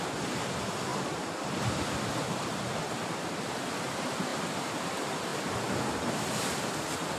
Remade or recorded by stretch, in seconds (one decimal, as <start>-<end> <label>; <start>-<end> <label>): 0.0-5.3 recorded; 5.3-5.9 remade; 5.9-7.2 recorded